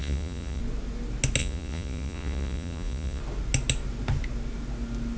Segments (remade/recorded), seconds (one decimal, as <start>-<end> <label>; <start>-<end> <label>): 0.0-0.6 remade; 0.6-1.4 recorded; 1.4-3.2 remade; 3.2-5.2 recorded